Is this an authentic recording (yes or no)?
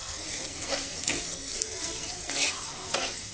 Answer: no